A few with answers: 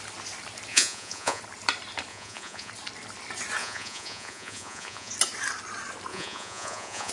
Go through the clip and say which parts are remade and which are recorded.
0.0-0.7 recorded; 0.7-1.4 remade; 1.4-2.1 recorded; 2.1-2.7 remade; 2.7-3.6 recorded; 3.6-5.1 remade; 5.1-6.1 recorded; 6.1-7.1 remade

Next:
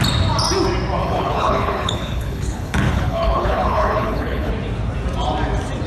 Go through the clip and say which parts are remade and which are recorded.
0.0-1.0 recorded; 1.0-4.5 remade; 4.5-5.9 recorded

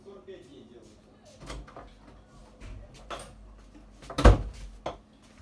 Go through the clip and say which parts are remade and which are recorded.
0.0-5.4 recorded

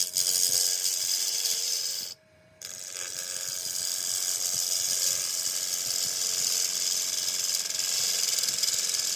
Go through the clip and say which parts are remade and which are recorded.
0.0-0.9 recorded; 0.9-5.4 remade; 5.4-9.2 recorded